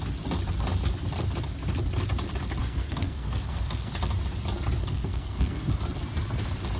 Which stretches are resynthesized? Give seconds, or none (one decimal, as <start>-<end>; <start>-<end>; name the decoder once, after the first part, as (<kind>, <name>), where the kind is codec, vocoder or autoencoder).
2.6-3.9 (codec, SNAC); 4.8-5.7